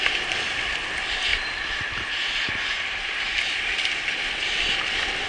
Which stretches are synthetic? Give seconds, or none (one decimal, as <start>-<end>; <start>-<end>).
0.0-5.3